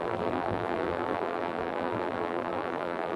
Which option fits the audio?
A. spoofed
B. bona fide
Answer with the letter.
A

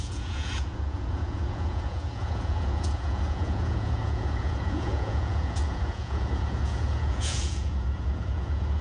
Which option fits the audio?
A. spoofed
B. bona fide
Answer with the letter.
A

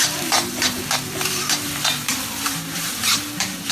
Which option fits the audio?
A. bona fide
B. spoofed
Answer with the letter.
B